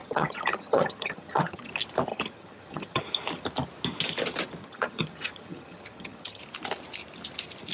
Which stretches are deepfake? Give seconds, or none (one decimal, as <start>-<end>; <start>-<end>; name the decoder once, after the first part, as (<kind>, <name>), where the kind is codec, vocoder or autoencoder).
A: 0.0-1.7 (vocoder, HiFi-GAN); 2.1-3.0; 4.6-6.4